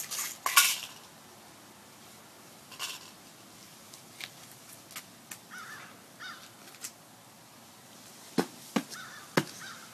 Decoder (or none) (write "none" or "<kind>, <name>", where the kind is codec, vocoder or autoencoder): none